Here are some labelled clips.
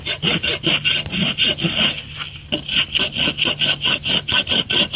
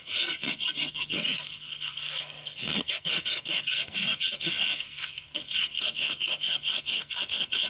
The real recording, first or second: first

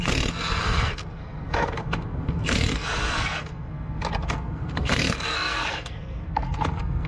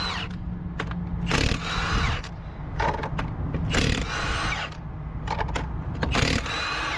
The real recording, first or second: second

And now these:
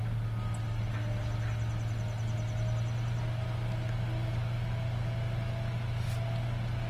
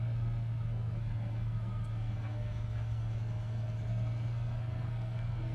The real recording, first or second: first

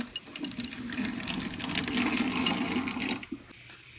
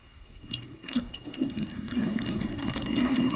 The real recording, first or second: first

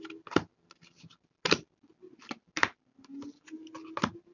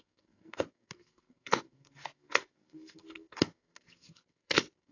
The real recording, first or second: first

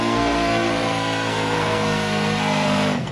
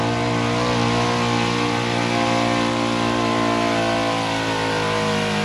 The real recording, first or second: second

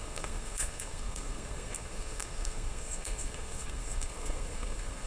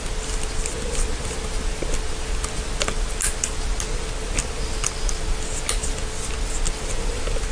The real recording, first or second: second